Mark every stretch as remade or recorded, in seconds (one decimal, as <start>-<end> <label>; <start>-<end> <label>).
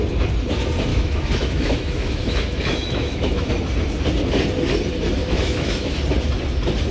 0.0-0.9 recorded; 0.9-3.5 remade; 3.5-5.2 recorded; 5.2-6.0 remade; 6.0-6.9 recorded